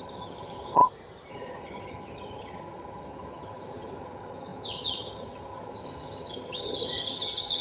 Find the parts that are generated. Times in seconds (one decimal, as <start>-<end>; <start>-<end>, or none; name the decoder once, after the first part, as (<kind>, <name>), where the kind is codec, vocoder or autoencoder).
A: 0.0-0.8 (vocoder, HiFi-GAN); 1.3-7.6